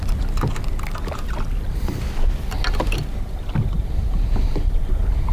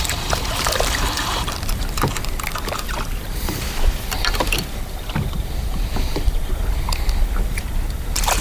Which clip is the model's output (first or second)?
second